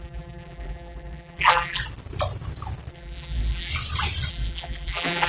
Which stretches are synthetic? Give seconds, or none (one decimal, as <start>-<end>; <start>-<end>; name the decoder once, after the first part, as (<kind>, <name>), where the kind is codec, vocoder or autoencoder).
0.0-1.8 (vocoder, BigVGAN v2); 2.9-3.7; 4.3-5.3